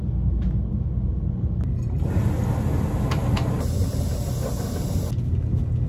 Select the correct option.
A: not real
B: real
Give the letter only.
B